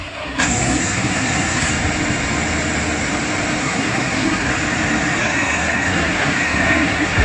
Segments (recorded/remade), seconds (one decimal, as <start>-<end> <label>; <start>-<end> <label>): 0.0-1.7 remade; 1.7-3.6 recorded; 3.6-4.5 remade; 4.5-5.2 recorded; 5.2-7.2 remade